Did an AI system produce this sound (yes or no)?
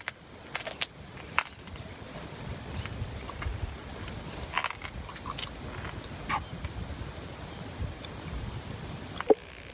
no